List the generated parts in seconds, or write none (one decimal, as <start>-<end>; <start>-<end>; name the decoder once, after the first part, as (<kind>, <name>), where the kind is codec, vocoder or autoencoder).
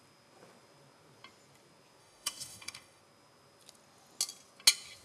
2.0-3.0 (autoencoder, DAC-VAE)